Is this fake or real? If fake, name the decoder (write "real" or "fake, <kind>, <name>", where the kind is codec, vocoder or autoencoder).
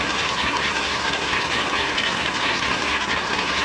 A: fake, codec, SNAC